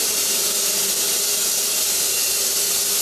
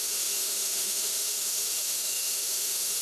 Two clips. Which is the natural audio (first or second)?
first